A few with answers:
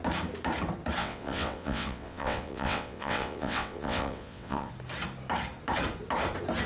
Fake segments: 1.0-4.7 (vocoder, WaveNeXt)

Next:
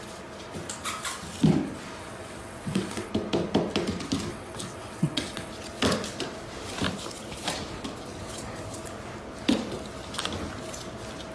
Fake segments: 2.0-3.1 (vocoder, WaveNeXt); 4.3-5.5

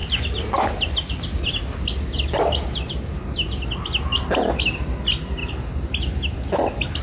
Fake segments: none

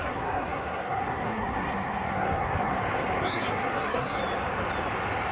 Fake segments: 0.0-2.7 (codec, SNAC); 3.2-4.2